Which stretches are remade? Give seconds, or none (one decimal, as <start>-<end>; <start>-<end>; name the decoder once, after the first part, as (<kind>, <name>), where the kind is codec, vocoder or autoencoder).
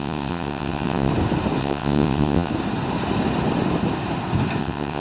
0.0-1.1 (vocoder, WaveNeXt); 1.6-2.5; 4.6-5.0